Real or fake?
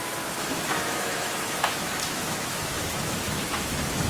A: fake